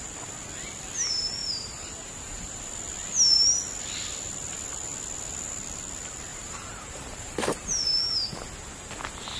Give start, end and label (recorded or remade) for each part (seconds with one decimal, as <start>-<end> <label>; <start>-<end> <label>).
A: 0.0-1.4 recorded; 1.4-2.6 remade; 2.6-6.3 recorded; 6.3-7.8 remade; 7.8-9.4 recorded